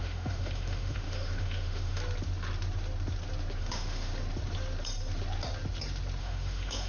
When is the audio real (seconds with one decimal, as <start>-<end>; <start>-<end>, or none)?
2.0-3.6; 4.1-6.2